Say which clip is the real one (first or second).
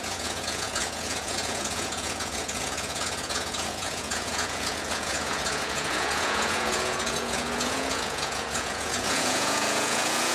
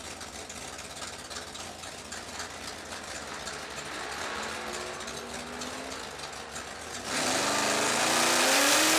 second